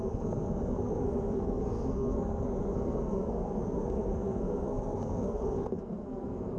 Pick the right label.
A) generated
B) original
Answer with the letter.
A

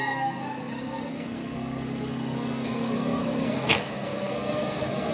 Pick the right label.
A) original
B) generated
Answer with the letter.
B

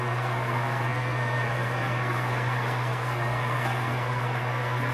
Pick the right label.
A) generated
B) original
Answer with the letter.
A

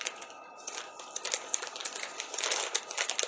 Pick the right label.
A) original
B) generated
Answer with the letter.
A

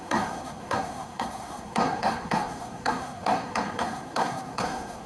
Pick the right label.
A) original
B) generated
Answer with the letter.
B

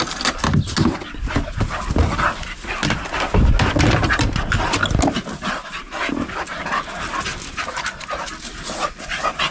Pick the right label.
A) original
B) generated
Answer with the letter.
A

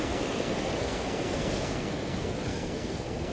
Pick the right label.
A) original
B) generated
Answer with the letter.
B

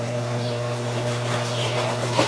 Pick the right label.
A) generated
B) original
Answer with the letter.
A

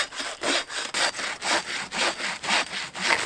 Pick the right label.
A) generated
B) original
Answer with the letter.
B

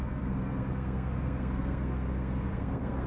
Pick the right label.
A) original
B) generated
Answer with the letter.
B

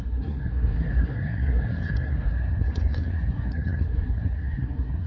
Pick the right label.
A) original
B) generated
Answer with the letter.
B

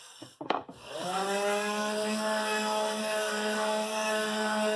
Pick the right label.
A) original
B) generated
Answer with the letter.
B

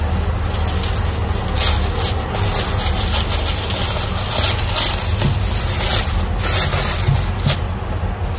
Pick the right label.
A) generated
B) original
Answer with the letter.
B